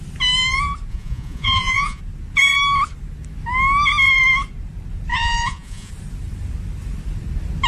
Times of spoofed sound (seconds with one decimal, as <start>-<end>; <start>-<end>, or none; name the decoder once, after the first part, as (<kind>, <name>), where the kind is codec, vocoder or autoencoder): 0.9-2.0 (vocoder, Vocos); 5.1-5.9